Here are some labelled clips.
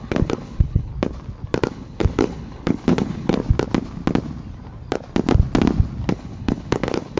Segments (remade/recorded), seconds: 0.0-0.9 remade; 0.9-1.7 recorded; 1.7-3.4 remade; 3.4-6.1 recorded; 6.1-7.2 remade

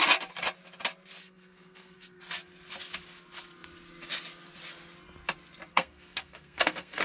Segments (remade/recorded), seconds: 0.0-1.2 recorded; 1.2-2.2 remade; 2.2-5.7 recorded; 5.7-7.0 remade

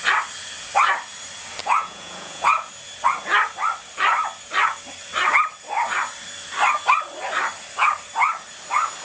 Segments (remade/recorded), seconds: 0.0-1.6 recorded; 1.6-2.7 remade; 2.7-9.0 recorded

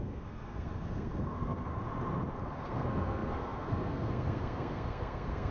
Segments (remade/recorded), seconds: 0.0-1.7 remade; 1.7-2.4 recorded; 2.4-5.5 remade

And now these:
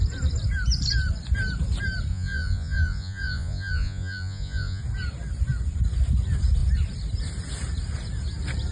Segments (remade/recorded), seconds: 0.0-2.1 recorded; 2.1-4.8 remade; 4.8-8.7 recorded

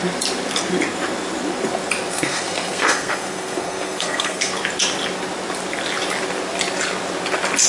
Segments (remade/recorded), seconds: 0.0-2.1 recorded; 2.1-4.5 remade; 4.5-7.7 recorded

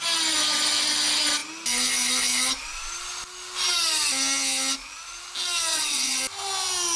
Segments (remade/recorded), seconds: 0.0-5.7 recorded; 5.7-6.2 remade; 6.2-7.0 recorded